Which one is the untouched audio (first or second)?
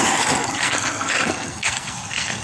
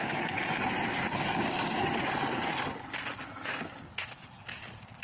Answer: second